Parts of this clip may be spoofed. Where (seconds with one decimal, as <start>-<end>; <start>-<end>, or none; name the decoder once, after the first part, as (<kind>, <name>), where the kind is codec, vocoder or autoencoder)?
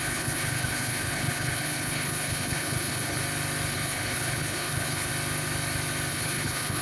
0.0-3.2 (codec, HILCodec); 3.7-5.1; 6.1-6.8